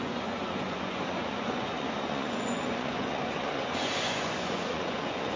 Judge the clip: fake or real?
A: fake